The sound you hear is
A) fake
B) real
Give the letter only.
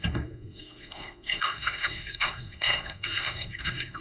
A